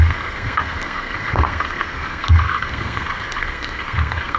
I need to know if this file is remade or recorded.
remade